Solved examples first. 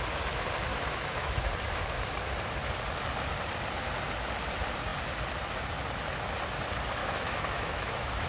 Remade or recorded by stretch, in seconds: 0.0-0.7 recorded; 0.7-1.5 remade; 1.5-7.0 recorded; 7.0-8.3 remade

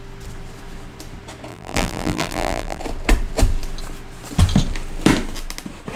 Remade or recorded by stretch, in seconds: 0.0-1.5 recorded; 1.5-2.8 remade; 2.8-6.0 recorded

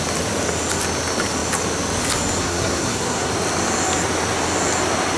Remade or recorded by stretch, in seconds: 0.0-2.4 recorded; 2.4-3.3 remade; 3.3-5.2 recorded

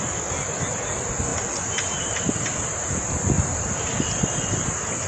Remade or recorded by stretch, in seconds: 0.0-5.1 recorded

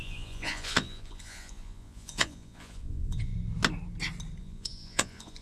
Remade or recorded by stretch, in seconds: 0.0-3.3 remade; 3.3-4.4 recorded; 4.4-5.4 remade

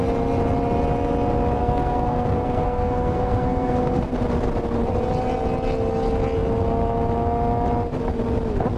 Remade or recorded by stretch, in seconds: 0.0-1.6 recorded; 1.6-4.1 remade; 4.1-8.8 recorded